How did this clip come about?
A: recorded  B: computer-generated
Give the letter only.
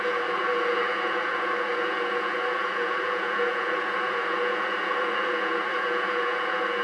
B